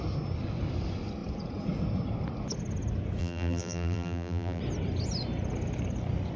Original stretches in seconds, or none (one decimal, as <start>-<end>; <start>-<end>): 0.0-3.2; 4.6-6.4